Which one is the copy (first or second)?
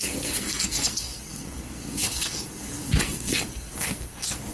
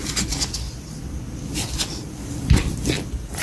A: first